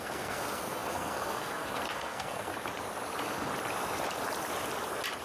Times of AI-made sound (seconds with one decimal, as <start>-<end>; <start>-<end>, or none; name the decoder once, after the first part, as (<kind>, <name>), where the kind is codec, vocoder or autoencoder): 0.0-2.5 (codec, SNAC)